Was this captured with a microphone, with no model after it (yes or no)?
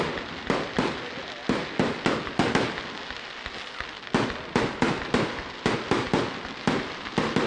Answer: yes